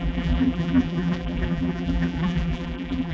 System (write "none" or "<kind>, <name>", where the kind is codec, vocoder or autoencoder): vocoder, BigVGAN v2